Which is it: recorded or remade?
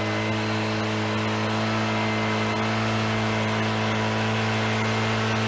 recorded